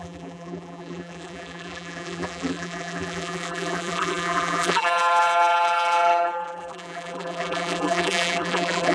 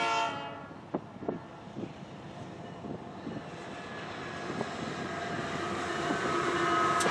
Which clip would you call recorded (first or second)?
second